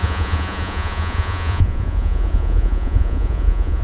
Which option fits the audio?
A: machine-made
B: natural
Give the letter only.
A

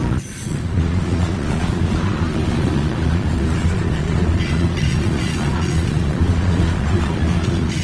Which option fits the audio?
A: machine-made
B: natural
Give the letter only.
A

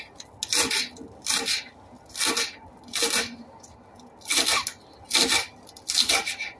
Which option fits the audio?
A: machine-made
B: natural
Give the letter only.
B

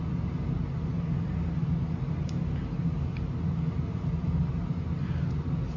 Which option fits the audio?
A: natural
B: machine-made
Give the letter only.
A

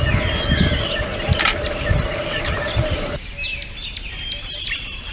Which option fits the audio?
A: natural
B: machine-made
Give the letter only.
A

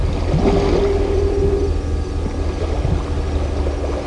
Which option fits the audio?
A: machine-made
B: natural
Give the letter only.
B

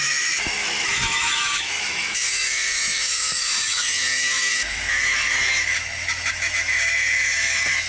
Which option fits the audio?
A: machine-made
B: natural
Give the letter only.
A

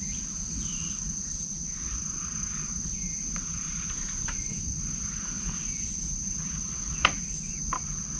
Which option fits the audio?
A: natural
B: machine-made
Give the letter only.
A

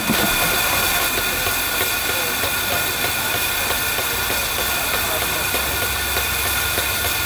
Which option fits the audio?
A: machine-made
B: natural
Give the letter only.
B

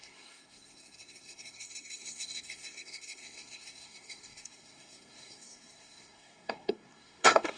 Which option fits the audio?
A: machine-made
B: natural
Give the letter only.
A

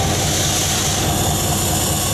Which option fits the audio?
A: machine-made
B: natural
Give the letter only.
B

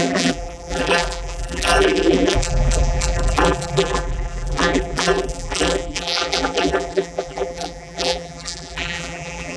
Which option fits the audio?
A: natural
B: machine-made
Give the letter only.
B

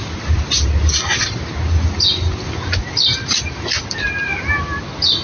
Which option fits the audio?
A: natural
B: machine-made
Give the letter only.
A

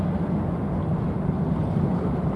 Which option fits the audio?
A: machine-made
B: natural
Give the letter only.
B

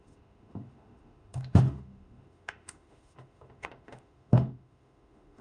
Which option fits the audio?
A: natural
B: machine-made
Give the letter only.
B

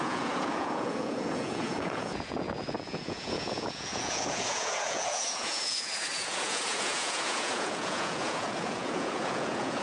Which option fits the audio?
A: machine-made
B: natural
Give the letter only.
A